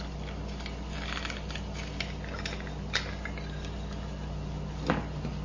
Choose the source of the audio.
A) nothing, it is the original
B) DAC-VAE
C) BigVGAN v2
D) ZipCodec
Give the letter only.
A